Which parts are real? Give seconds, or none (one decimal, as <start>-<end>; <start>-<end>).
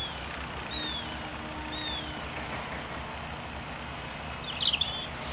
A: 0.0-5.3